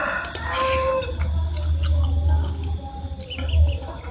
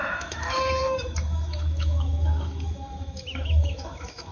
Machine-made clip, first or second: second